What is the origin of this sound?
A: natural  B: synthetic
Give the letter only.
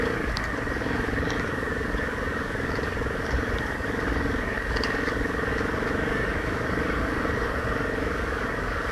B